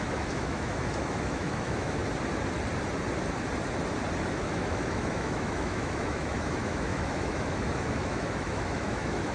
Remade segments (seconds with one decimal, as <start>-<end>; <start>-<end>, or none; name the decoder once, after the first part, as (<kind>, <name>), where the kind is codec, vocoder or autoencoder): 0.0-2.0 (autoencoder, DAC-VAE); 4.3-9.3